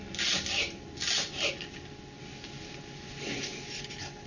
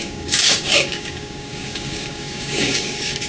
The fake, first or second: second